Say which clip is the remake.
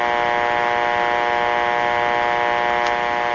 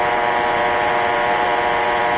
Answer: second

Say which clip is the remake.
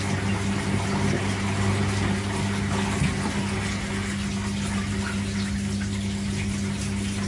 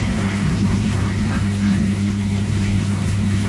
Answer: second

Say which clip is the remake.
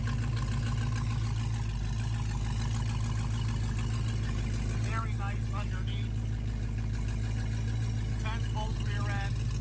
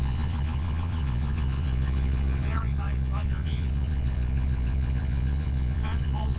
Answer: second